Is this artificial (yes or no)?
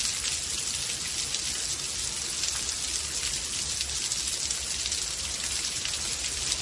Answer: no